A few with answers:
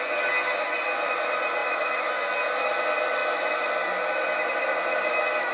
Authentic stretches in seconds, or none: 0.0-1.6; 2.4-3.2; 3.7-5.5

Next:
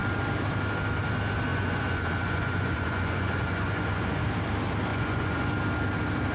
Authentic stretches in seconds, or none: 0.0-1.5; 4.2-4.9; 5.5-6.3